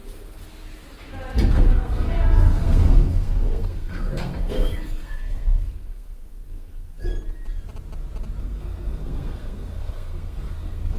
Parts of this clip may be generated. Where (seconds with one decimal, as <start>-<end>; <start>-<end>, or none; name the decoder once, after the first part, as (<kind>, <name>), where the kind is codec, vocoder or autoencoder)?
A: 1.5-7.1 (codec, SNAC); 8.4-11.0